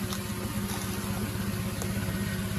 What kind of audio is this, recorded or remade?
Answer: recorded